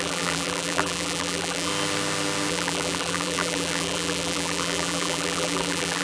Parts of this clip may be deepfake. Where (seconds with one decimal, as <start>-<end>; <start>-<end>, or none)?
0.0-1.7; 2.5-6.0